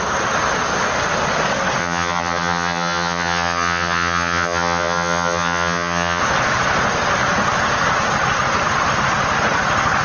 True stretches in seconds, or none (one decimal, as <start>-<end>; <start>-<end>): 0.0-1.8; 6.2-10.0